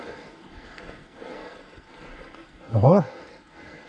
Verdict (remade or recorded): remade